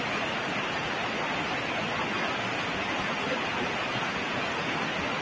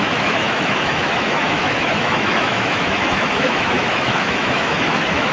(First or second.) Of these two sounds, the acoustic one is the first